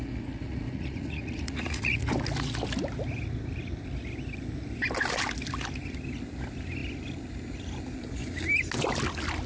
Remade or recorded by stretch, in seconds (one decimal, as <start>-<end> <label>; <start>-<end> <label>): 0.0-0.4 recorded; 0.4-2.1 remade; 2.1-9.5 recorded